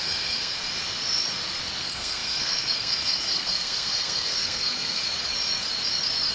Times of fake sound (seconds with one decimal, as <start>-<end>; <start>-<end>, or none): 0.0-0.6; 1.8-5.0